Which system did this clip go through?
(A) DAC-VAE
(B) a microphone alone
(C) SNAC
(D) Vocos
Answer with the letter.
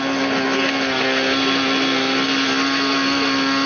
B